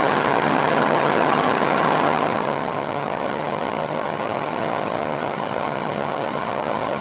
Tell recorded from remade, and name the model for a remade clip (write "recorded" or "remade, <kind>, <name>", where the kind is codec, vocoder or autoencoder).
remade, vocoder, HiFi-GAN